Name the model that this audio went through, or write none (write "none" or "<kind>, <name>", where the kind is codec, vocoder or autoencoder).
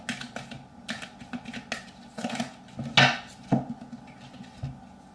none